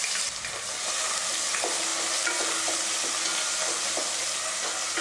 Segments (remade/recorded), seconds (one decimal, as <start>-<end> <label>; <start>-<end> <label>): 0.0-5.0 recorded